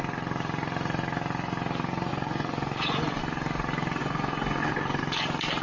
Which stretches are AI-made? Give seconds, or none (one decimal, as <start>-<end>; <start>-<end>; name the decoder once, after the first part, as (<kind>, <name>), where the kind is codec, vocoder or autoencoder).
2.1-3.2 (vocoder, Vocos); 4.0-5.0

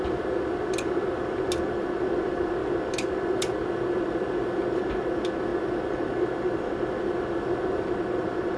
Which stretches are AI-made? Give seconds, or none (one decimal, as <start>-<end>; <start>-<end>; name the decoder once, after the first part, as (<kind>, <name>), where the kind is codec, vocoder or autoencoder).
none

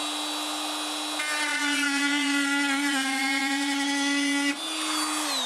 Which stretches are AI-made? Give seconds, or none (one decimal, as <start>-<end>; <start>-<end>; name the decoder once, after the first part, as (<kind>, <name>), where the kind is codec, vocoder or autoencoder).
1.5-4.5 (vocoder, Vocos)

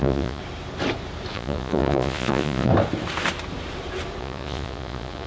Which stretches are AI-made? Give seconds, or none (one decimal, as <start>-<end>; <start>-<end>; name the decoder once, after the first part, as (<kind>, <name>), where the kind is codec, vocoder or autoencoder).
0.0-0.4 (vocoder, Vocos); 1.3-2.7; 4.2-5.3

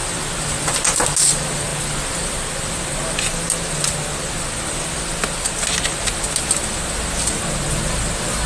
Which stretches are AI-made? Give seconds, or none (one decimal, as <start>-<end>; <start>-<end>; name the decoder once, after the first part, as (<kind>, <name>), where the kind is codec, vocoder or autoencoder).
none

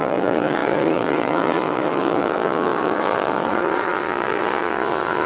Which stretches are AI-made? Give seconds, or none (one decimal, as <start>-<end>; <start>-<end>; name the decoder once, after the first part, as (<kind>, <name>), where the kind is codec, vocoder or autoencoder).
0.0-5.3 (vocoder, Vocos)